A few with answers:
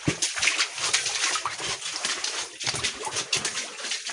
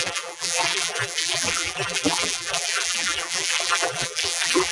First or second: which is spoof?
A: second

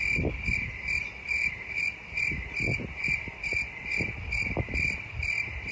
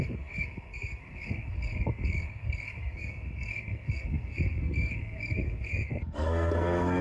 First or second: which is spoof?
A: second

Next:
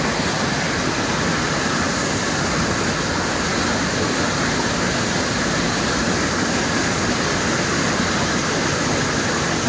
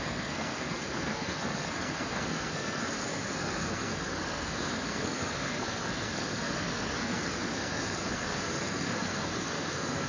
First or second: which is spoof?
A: second